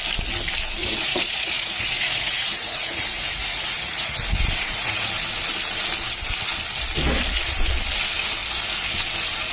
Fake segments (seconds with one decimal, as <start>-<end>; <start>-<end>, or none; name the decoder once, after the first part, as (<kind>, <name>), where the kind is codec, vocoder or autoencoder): 0.8-5.1 (vocoder, Vocos)